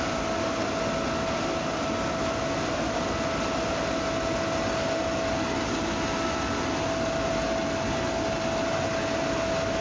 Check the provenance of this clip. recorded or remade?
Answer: recorded